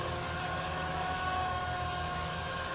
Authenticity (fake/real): fake